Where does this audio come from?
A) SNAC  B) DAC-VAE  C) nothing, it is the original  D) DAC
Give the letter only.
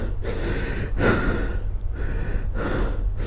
C